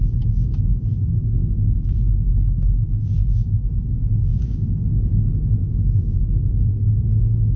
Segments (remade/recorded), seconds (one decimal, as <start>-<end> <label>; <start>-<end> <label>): 0.0-7.6 remade